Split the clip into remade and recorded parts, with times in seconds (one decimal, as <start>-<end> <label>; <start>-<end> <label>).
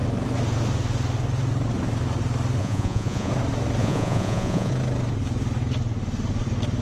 0.0-2.6 recorded; 2.6-3.3 remade; 3.3-3.8 recorded; 3.8-4.7 remade; 4.7-6.8 recorded